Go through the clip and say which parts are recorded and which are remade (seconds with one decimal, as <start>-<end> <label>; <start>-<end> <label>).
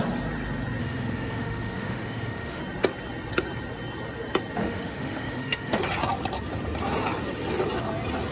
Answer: 0.0-0.8 recorded; 0.8-2.6 remade; 2.6-4.6 recorded; 4.6-5.8 remade; 5.8-8.3 recorded